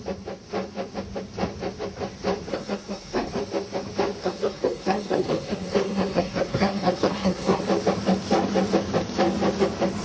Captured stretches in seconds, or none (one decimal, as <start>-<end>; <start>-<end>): 0.0-2.5; 3.3-4.2; 7.6-10.0